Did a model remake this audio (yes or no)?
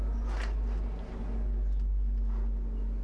no